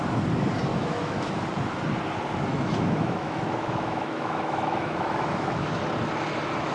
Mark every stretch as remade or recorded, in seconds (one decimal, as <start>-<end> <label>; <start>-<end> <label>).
0.0-0.7 recorded; 0.7-1.3 remade; 1.3-2.5 recorded; 2.5-5.8 remade; 5.8-6.7 recorded